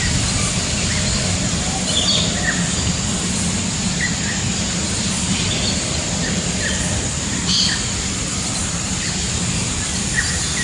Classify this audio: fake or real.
real